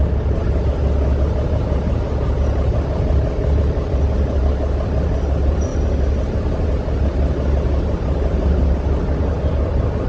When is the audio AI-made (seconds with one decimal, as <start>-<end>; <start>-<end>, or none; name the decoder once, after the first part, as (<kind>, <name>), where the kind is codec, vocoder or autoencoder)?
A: none